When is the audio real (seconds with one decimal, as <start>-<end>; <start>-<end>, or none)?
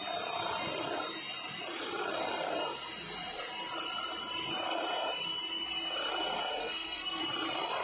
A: 0.0-6.6; 7.2-7.8